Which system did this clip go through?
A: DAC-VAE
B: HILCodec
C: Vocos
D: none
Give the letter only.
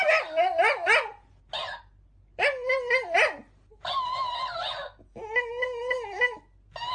D